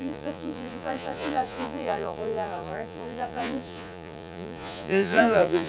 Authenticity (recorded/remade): remade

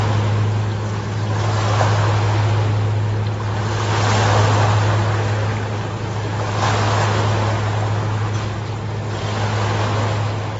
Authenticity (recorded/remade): recorded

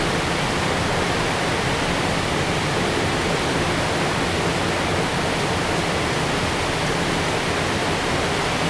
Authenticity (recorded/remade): recorded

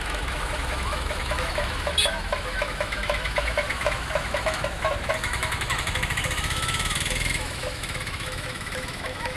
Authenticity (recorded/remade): remade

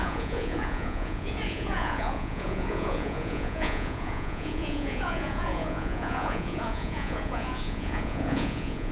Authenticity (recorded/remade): remade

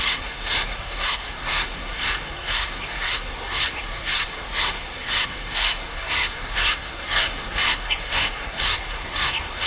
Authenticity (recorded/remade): remade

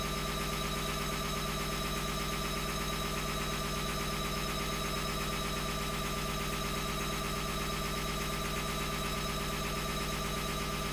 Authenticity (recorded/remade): remade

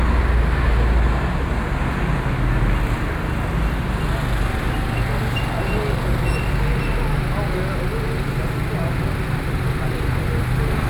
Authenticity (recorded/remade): recorded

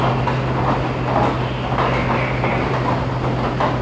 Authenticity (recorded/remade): recorded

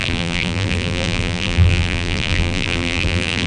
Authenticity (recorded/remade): remade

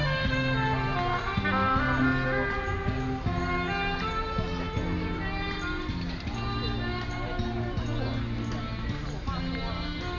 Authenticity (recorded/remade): recorded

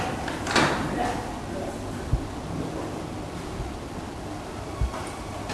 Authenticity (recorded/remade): recorded